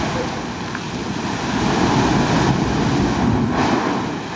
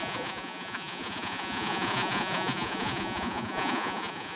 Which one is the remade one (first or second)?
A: second